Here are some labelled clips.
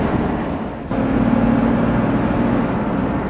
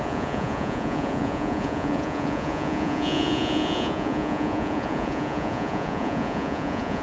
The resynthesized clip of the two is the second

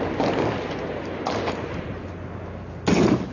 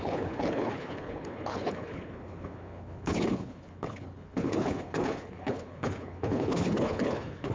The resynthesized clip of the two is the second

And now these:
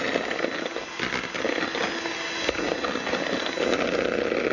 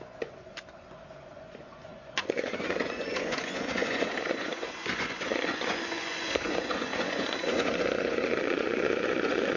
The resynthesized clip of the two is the second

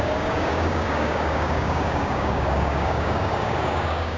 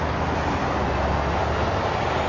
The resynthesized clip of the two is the first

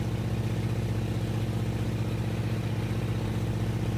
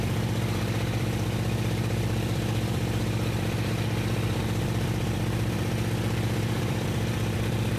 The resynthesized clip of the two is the second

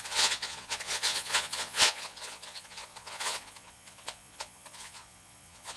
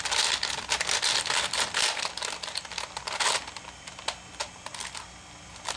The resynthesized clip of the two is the first